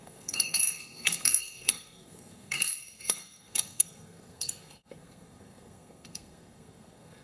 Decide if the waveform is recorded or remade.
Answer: remade